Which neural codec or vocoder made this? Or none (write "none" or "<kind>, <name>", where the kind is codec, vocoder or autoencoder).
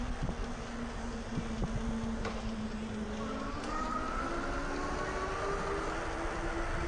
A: none